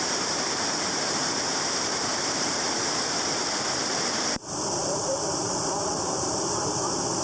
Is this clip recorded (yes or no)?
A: no